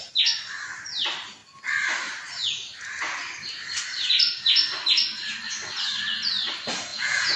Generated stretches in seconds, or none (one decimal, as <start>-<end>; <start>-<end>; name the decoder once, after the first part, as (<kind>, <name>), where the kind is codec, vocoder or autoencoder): 6.9-7.4 (vocoder, Vocos)